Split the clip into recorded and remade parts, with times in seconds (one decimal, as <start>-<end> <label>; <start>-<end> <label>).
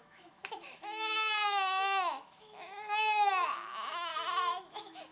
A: 0.0-4.1 remade; 4.1-4.6 recorded; 4.6-5.1 remade